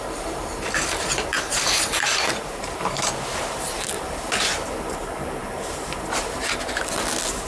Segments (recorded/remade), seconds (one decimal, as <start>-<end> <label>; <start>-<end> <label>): 0.0-1.3 recorded; 1.3-3.1 remade; 3.1-7.5 recorded